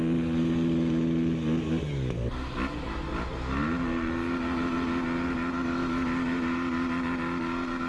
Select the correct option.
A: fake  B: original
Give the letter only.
B